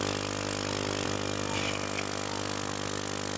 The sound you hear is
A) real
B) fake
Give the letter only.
A